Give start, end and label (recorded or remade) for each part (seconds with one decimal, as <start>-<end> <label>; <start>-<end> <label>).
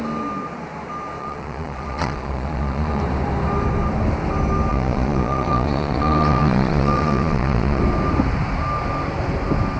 0.0-1.2 recorded; 1.2-3.0 remade; 3.0-4.7 recorded; 4.7-7.8 remade; 7.8-9.8 recorded